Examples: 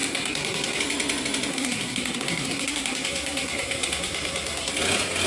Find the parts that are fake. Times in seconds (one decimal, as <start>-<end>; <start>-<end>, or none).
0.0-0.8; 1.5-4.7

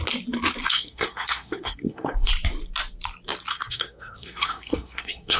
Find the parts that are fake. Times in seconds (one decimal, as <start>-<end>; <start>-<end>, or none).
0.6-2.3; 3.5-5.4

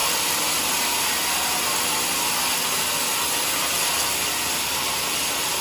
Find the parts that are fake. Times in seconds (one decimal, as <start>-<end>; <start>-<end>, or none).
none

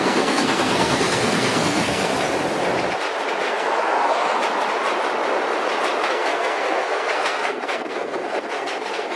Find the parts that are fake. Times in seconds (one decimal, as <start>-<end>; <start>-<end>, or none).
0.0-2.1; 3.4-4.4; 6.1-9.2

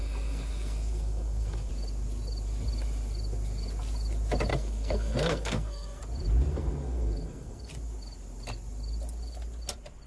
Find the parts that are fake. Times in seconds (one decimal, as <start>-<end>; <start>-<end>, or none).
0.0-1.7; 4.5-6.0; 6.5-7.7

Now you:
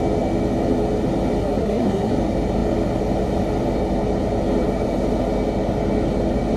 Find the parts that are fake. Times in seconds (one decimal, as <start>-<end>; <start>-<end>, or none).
1.4-2.1

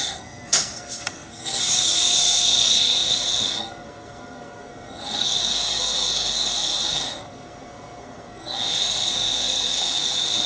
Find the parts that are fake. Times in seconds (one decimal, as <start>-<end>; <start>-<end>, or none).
0.0-10.5